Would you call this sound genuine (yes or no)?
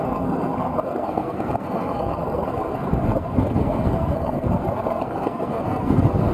no